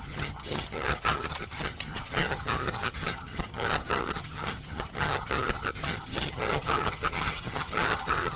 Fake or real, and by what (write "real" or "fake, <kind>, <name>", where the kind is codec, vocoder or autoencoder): fake, vocoder, HiFi-GAN